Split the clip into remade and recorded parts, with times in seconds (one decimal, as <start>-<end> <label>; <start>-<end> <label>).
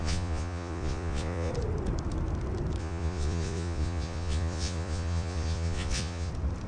0.0-1.5 remade; 1.5-2.8 recorded; 2.8-6.3 remade; 6.3-6.7 recorded